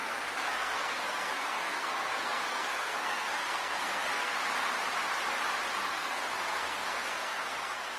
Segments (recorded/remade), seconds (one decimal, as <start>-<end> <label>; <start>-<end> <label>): 0.0-4.4 remade; 4.4-5.8 recorded; 5.8-8.0 remade